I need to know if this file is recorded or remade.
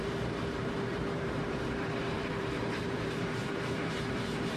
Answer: remade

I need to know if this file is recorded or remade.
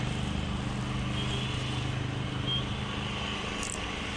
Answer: recorded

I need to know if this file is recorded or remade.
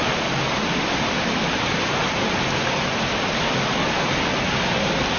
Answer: recorded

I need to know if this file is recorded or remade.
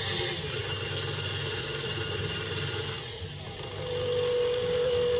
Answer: recorded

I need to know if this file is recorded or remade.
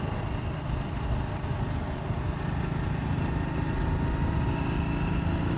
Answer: recorded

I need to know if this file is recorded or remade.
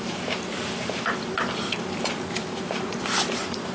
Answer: remade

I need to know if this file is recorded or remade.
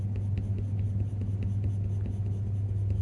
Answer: recorded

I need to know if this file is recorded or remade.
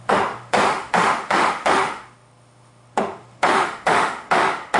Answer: remade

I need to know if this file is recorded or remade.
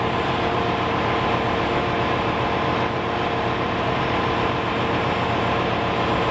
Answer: recorded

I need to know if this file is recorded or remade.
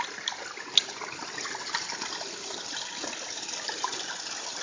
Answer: recorded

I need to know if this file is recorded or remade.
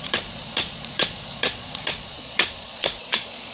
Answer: remade